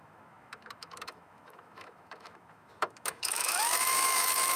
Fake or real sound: fake